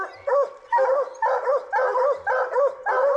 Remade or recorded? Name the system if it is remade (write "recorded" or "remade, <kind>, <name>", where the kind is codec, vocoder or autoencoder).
recorded